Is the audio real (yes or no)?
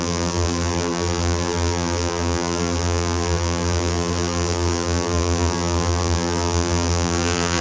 no